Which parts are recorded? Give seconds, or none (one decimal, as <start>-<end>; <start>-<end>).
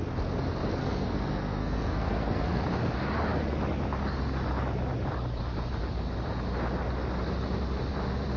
0.0-0.8; 2.6-8.4